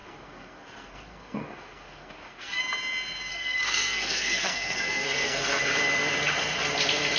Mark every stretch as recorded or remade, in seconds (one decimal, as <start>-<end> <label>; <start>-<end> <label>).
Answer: 0.0-2.6 remade; 2.6-3.3 recorded; 3.3-5.6 remade; 5.6-7.2 recorded